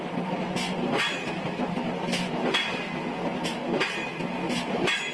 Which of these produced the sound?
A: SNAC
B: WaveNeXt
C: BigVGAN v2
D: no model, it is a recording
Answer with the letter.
D